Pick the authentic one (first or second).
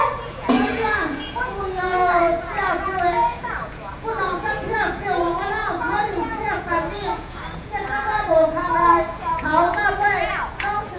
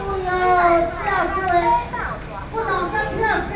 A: second